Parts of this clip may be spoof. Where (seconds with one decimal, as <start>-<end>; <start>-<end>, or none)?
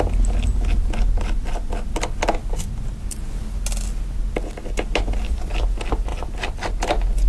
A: none